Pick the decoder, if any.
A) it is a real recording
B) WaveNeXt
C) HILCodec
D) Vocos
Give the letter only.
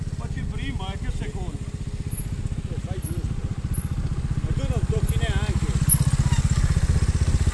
A